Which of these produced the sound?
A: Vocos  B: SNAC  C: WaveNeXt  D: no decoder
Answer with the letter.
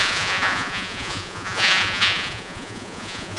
A